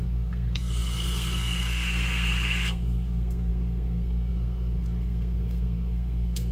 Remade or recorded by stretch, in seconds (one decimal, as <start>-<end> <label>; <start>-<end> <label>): 0.0-6.5 remade